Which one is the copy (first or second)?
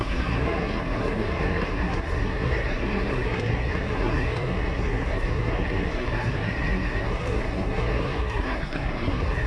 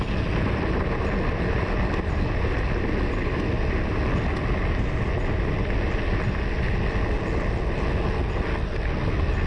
first